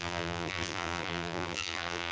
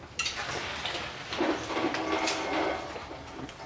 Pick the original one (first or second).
second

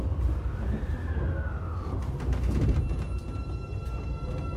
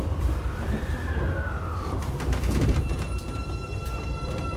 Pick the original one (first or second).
first